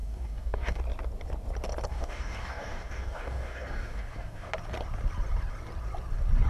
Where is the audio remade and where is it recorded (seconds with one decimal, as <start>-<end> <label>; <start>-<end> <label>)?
0.0-0.8 remade; 0.8-1.9 recorded; 1.9-4.5 remade; 4.5-6.5 recorded

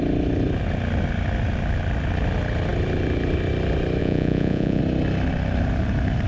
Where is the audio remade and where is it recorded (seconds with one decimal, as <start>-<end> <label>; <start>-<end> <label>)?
0.0-4.0 recorded; 4.0-4.8 remade; 4.8-6.3 recorded

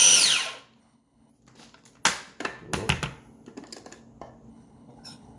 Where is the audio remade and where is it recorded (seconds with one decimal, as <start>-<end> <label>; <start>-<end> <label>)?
0.0-0.8 recorded; 0.8-1.3 remade; 1.3-4.5 recorded; 4.5-5.4 remade